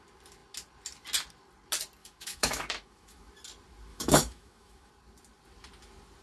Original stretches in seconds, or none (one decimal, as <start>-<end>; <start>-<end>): 0.0-2.0; 3.3-3.9; 4.9-6.2